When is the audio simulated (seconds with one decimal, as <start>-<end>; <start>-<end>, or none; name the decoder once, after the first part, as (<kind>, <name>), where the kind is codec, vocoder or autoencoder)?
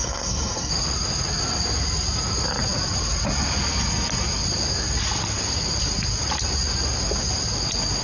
0.0-0.7 (codec, SNAC)